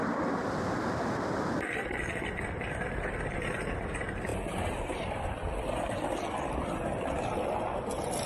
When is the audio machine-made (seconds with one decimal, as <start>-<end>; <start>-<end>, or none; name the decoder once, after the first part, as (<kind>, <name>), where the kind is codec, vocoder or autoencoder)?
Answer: 4.3-5.3 (vocoder, BigVGAN v2)